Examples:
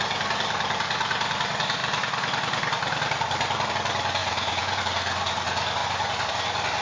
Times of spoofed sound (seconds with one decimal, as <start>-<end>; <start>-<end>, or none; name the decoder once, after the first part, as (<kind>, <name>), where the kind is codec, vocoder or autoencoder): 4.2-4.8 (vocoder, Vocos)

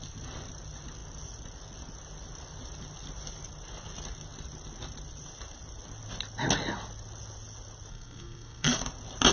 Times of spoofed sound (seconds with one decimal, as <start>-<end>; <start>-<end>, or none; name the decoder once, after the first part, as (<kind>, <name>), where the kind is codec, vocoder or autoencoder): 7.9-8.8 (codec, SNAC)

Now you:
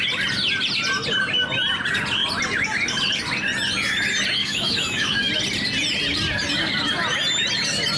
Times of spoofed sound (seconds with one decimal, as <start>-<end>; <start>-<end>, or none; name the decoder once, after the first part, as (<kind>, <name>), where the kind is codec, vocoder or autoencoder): 4.4-5.3 (autoencoder, DAC-VAE)